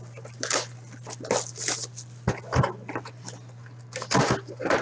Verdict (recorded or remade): recorded